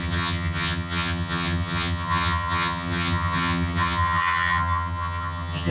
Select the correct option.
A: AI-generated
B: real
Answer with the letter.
A